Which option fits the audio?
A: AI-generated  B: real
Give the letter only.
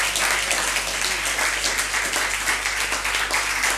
B